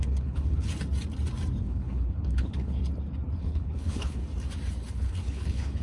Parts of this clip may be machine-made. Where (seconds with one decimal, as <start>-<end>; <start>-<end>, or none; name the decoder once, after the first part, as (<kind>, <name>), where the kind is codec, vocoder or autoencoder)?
0.0-0.7 (codec, HILCodec); 1.6-2.8; 3.4-4.2; 4.9-5.8